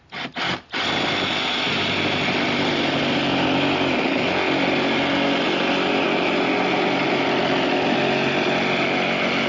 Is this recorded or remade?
recorded